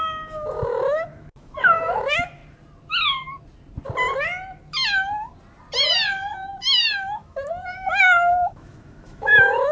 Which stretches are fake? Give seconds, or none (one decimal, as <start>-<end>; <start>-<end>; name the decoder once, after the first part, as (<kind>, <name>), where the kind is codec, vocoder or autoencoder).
0.0-2.4 (autoencoder, DAC-VAE); 6.6-9.7